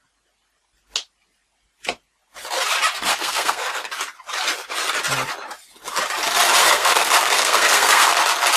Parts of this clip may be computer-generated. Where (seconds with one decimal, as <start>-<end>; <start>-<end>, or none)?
3.1-3.9; 6.6-8.2